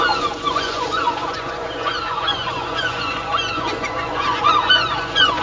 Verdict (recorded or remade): remade